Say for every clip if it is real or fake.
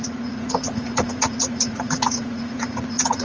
fake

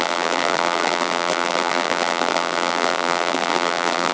fake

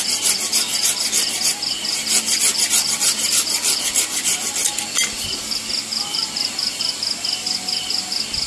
real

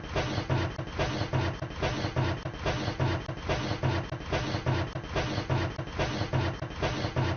real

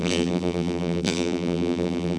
fake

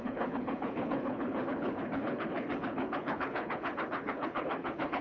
fake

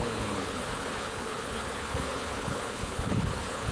fake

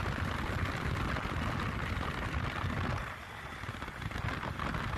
real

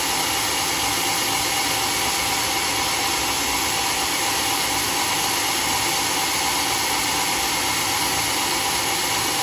fake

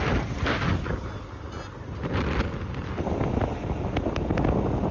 real